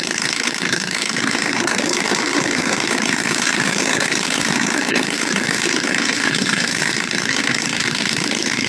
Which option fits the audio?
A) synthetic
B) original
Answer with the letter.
A